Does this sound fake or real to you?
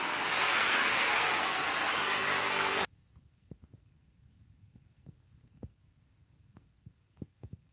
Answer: fake